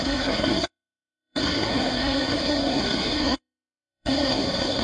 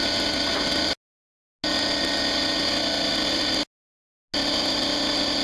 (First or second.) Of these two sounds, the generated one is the first